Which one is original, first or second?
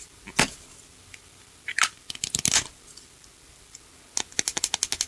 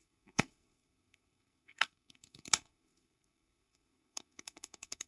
first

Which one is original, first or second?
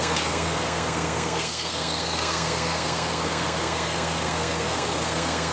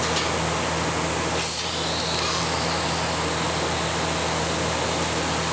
second